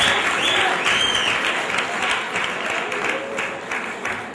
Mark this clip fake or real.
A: real